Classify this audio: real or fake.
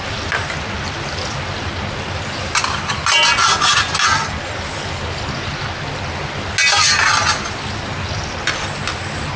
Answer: real